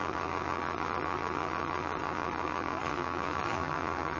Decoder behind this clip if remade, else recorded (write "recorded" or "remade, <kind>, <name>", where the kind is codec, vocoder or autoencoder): remade, vocoder, BigVGAN v2